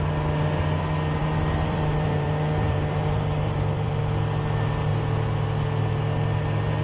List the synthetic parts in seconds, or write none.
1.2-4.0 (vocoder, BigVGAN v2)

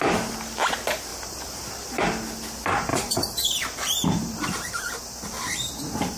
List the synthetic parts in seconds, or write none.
1.1-2.0 (vocoder, BigVGAN v2); 2.9-4.9

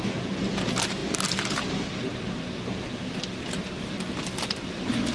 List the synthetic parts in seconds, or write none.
1.0-2.4 (vocoder, BigVGAN v2)

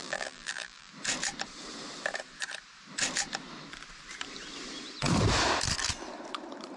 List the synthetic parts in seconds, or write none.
0.0-0.9 (vocoder, BigVGAN v2)

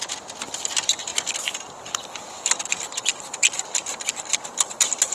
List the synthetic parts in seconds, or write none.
3.1-4.3 (vocoder, BigVGAN v2)

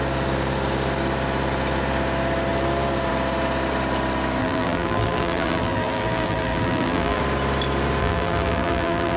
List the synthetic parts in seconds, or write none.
4.4-7.2 (vocoder, BigVGAN v2); 8.0-9.2